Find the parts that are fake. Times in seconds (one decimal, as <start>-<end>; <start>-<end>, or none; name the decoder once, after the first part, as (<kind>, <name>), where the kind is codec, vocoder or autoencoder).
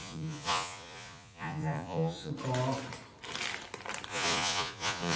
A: 0.0-2.3 (vocoder, Vocos); 4.1-5.2